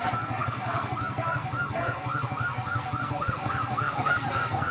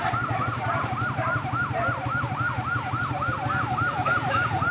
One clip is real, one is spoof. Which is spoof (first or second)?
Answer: first